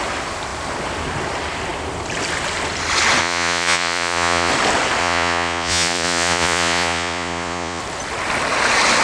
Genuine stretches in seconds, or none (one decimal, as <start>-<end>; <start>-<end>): 0.0-3.2; 4.5-5.0; 7.8-9.0